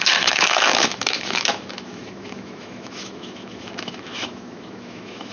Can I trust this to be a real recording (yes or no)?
no